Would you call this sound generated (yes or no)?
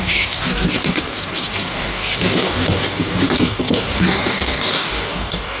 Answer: yes